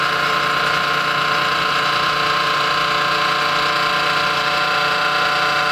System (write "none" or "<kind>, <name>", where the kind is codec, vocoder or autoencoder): none